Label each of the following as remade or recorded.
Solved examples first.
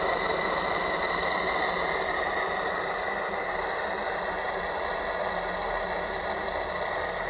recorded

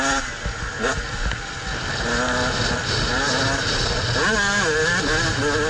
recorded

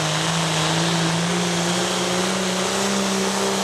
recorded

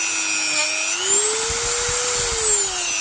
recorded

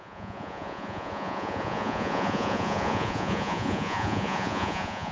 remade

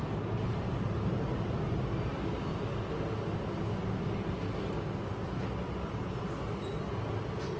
recorded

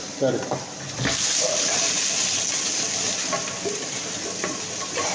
recorded